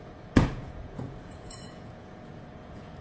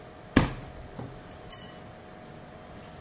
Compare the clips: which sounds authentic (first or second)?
second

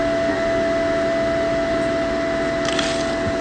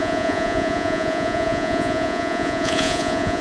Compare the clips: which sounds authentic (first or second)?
first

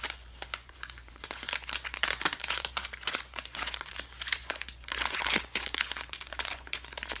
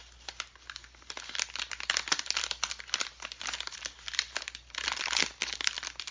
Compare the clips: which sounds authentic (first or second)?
second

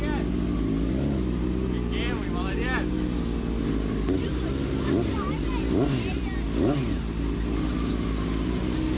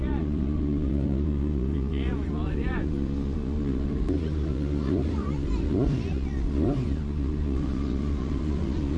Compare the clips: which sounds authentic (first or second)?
first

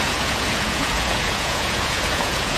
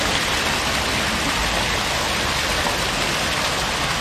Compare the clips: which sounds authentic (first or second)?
second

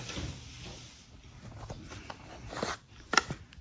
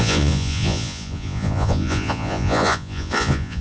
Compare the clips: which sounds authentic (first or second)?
first